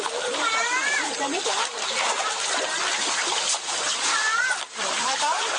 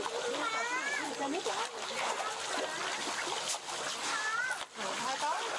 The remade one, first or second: first